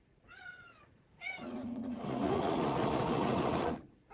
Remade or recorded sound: remade